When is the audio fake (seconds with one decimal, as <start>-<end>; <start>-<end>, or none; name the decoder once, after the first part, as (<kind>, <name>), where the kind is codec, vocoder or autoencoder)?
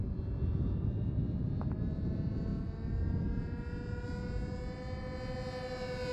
none